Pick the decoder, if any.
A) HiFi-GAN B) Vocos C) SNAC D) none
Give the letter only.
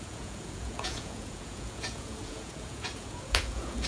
B